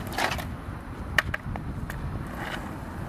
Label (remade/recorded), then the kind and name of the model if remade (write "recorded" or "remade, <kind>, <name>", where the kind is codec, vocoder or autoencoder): recorded